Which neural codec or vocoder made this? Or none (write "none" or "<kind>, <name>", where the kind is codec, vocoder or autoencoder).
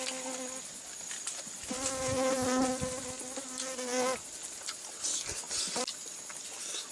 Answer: none